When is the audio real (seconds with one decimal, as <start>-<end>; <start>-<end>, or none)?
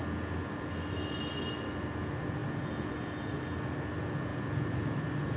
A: 0.0-5.4